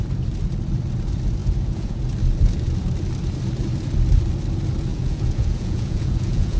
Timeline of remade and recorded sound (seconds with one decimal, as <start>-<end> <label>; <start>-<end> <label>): 0.0-1.4 recorded; 1.4-2.0 remade; 2.0-4.9 recorded; 4.9-6.6 remade